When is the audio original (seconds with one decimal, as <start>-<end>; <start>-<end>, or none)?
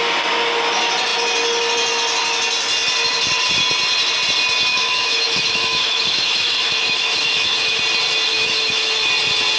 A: 0.0-4.7; 7.8-8.3; 9.1-9.6